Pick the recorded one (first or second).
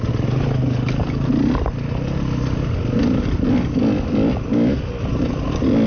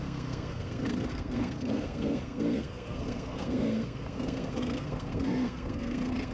first